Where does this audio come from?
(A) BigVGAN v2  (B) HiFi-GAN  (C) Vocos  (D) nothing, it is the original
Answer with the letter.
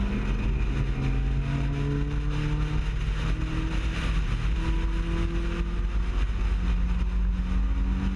D